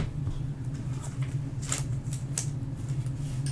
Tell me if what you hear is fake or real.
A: real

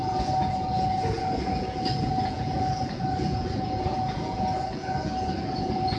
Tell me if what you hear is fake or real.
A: fake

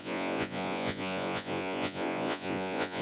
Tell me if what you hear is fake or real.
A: fake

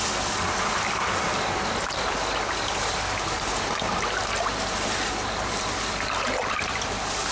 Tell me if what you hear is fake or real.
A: real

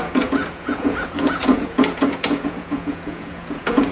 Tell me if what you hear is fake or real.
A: fake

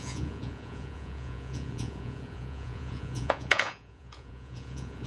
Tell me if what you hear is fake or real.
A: fake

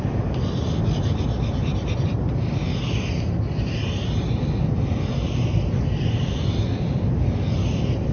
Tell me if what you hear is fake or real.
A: real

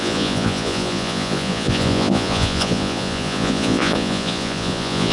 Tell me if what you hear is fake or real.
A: fake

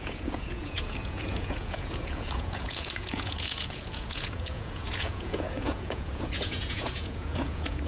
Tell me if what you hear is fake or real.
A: fake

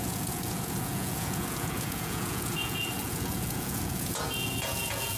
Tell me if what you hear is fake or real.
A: fake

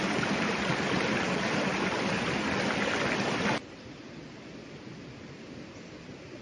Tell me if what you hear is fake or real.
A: real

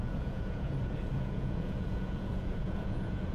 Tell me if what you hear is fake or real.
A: fake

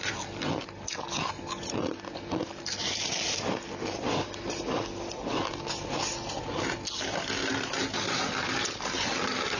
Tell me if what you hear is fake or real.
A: real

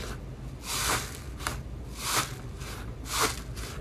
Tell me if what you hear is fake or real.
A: real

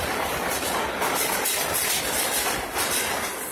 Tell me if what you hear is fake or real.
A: real